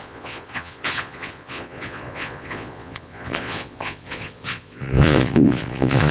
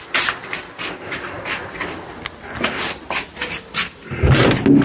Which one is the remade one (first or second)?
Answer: first